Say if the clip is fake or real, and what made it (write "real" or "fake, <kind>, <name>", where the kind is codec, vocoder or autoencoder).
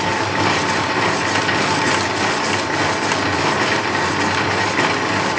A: real